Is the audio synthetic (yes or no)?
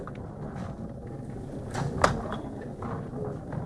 no